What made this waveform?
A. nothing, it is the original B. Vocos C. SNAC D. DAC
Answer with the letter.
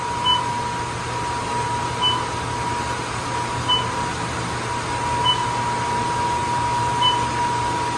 A